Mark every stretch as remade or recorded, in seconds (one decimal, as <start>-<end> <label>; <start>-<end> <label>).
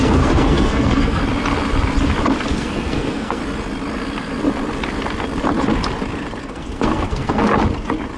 0.0-1.2 remade; 1.2-2.5 recorded; 2.5-3.4 remade; 3.4-6.4 recorded; 6.4-7.5 remade; 7.5-8.2 recorded